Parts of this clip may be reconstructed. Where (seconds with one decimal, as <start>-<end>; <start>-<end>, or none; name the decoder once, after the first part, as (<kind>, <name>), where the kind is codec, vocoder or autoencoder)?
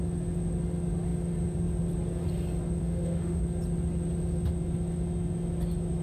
2.8-3.4 (autoencoder, DAC-VAE)